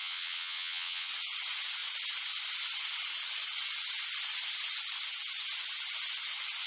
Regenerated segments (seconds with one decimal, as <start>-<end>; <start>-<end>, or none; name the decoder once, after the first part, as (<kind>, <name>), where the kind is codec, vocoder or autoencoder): 0.0-1.1 (vocoder, WaveNeXt)